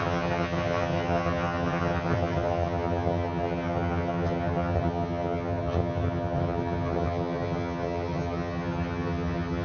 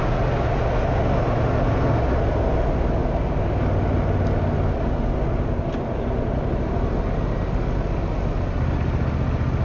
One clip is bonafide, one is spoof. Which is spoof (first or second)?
first